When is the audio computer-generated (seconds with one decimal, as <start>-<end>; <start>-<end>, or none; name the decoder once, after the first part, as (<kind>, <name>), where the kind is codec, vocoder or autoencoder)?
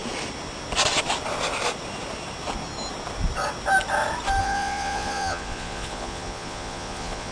4.4-7.3 (vocoder, Vocos)